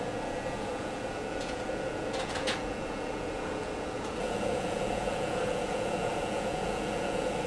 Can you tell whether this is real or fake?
fake